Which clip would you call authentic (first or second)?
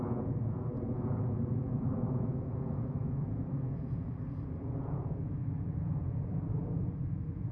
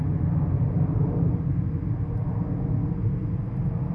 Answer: second